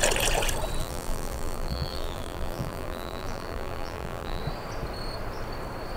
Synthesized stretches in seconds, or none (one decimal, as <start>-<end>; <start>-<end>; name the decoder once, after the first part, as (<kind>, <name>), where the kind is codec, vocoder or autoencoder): 0.8-4.4 (vocoder, BigVGAN v2)